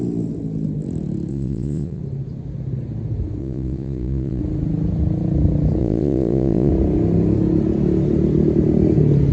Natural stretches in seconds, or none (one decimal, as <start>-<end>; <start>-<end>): 0.0-1.3; 2.0-3.4; 4.4-5.8; 6.7-9.3